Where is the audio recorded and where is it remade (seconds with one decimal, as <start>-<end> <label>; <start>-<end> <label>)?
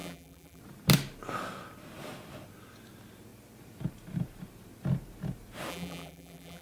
0.0-0.6 remade; 0.6-5.7 recorded; 5.7-6.6 remade